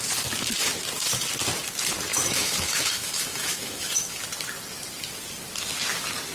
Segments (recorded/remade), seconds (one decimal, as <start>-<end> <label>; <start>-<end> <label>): 0.0-2.1 recorded; 2.1-4.2 remade; 4.2-6.3 recorded